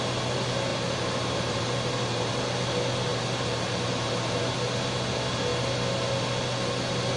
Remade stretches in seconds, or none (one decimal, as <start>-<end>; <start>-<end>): 0.7-2.3; 3.1-4.4